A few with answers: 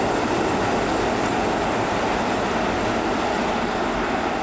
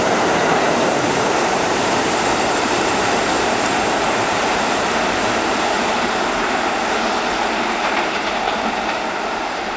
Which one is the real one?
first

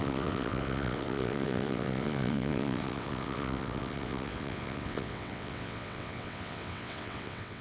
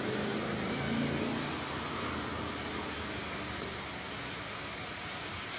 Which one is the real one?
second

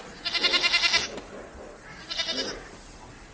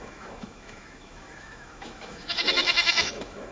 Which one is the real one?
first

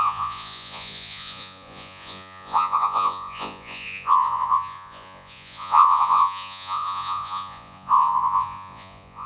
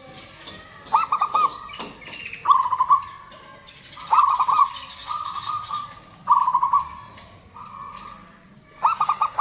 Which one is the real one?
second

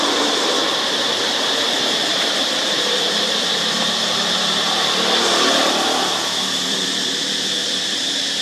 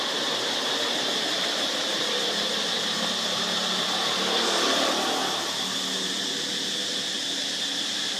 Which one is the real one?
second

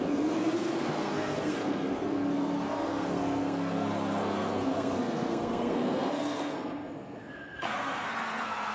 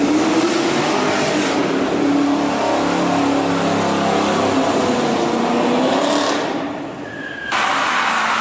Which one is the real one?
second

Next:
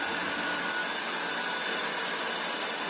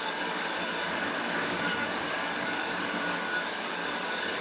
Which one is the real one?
first